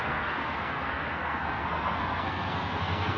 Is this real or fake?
fake